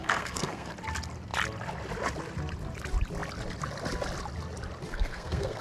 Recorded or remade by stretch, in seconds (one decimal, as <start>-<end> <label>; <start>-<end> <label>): 0.0-0.7 remade; 0.7-4.9 recorded; 4.9-5.6 remade